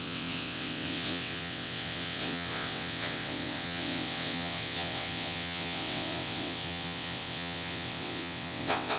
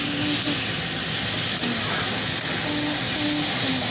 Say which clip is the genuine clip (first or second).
second